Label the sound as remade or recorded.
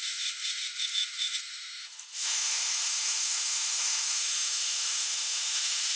remade